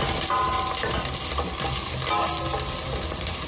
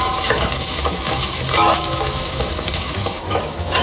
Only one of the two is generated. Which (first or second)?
second